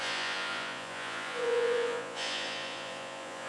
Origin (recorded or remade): remade